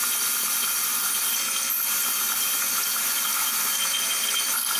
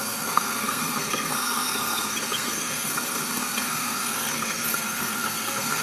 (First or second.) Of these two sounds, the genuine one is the first